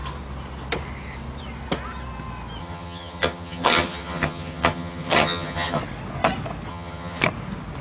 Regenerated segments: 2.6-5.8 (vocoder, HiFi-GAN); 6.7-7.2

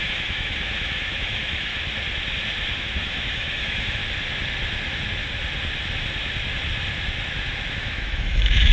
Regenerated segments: 0.0-1.7 (autoencoder, DAC-VAE); 2.8-4.0; 7.7-8.7

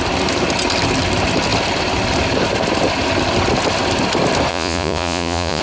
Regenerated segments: 4.5-5.6 (vocoder, Vocos)

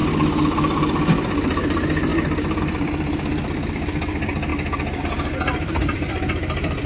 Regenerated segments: 1.1-2.1 (vocoder, BigVGAN v2); 2.6-4.5; 5.0-6.9

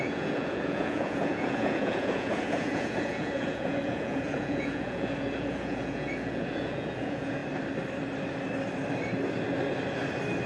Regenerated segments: 0.0-7.4 (vocoder, Vocos)

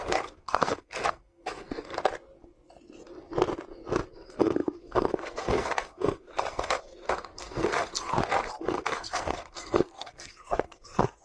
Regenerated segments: 0.0-1.9 (codec, SNAC); 4.1-7.9; 8.6-11.2